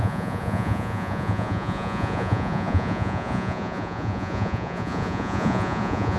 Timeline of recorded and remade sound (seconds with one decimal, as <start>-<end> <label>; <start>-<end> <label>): 0.0-6.2 remade